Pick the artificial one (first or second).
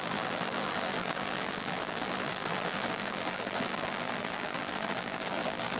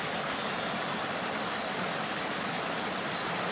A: first